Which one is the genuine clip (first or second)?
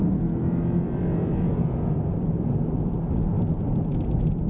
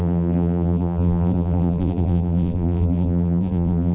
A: first